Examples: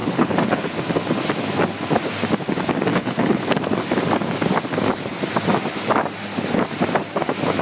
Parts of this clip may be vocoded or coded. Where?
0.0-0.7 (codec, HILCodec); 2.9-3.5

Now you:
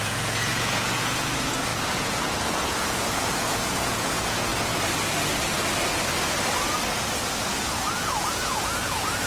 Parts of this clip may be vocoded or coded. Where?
0.0-4.5 (vocoder, Vocos); 7.5-9.3

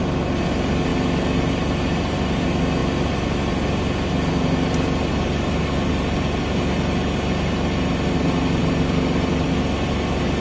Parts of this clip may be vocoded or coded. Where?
none

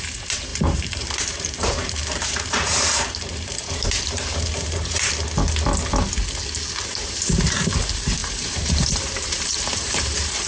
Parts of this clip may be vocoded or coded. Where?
0.0-5.1 (vocoder, BigVGAN v2); 7.0-10.5

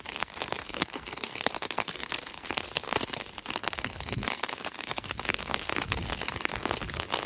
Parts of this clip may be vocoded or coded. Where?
0.0-7.3 (codec, SNAC)

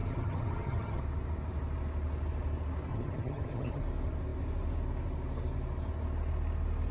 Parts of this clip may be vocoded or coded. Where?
0.0-1.0 (vocoder, HiFi-GAN); 2.9-3.8

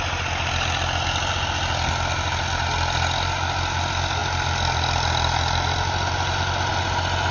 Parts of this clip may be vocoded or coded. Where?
none